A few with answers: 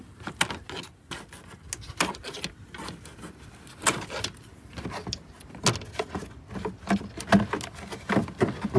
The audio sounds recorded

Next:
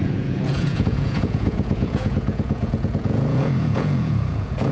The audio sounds remade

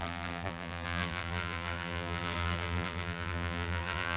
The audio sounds remade